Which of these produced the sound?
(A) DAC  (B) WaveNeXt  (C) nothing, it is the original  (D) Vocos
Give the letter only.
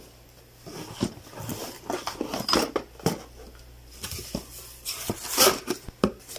C